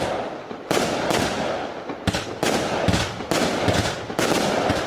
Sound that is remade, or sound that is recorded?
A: recorded